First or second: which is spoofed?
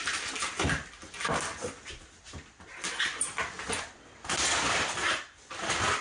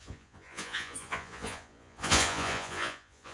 second